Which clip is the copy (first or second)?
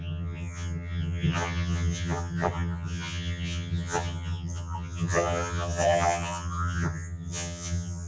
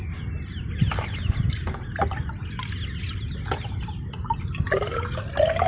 first